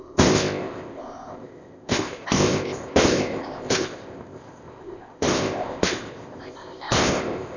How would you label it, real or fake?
fake